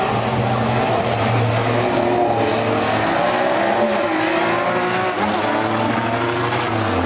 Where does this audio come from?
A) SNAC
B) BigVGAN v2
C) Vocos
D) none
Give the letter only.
D